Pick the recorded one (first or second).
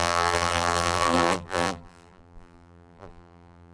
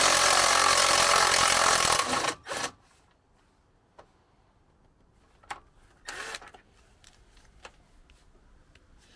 second